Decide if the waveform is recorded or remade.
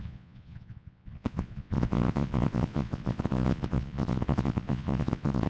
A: remade